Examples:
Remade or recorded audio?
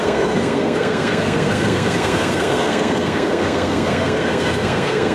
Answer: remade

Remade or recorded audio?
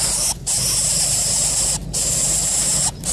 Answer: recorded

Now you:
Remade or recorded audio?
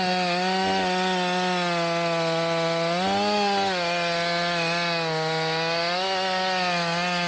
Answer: recorded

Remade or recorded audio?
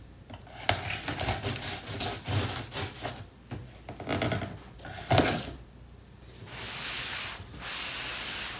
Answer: recorded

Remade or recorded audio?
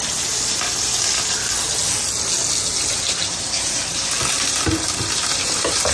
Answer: recorded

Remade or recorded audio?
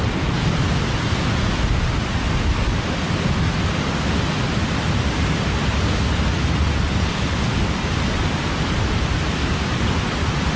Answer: recorded